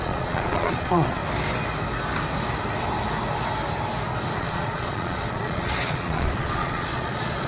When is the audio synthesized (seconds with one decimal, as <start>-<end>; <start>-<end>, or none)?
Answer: 0.0-1.2; 4.4-7.5